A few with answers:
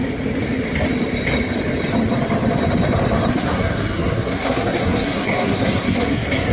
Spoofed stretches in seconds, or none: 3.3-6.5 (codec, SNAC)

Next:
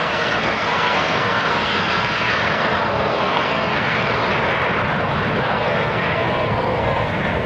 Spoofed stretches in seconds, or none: 0.0-4.2 (codec, SNAC); 5.4-7.5

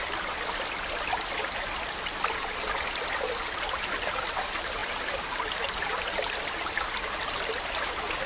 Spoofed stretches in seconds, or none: none

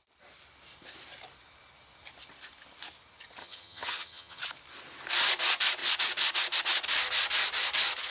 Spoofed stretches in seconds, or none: 3.4-4.4 (vocoder, HiFi-GAN)

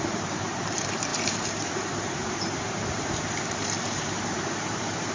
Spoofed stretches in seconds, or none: 0.0-5.1 (vocoder, BigVGAN v2)